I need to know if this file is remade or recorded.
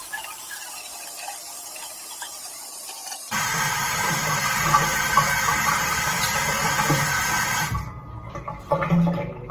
remade